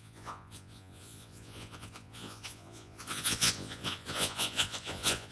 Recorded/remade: remade